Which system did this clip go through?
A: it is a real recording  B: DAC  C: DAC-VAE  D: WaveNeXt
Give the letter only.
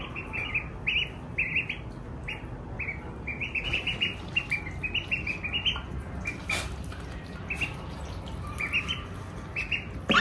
A